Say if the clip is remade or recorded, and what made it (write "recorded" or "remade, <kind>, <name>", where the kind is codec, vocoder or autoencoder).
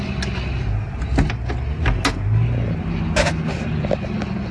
recorded